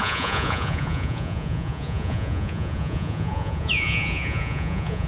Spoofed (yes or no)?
yes